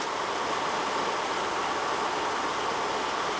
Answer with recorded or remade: recorded